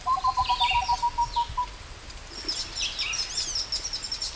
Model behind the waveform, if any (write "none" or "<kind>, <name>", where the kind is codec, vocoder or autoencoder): none